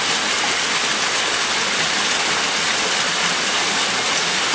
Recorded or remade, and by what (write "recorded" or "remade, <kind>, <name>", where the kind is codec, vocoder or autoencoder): recorded